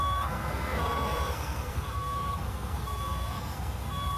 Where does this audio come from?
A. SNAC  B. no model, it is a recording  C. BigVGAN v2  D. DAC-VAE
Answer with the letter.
A